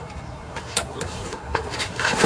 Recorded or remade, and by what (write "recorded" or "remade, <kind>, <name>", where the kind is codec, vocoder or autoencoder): remade, codec, SNAC